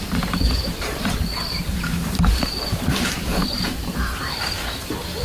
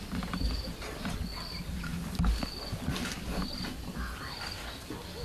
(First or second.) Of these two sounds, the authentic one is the second